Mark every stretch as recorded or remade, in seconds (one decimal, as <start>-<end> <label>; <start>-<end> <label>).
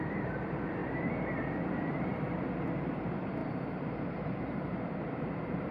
0.0-2.1 remade; 2.1-3.0 recorded; 3.0-3.4 remade; 3.4-4.4 recorded; 4.4-5.7 remade